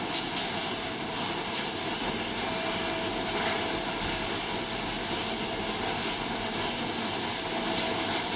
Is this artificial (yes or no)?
no